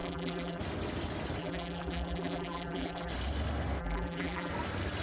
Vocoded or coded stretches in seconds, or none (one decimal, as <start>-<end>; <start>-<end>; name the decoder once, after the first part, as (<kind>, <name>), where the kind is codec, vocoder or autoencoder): 0.0-0.6 (vocoder, BigVGAN v2); 1.4-3.1; 3.8-4.5